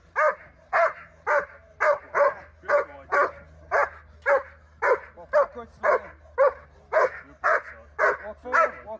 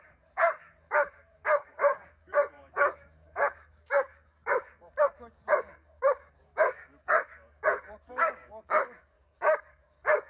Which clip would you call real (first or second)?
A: first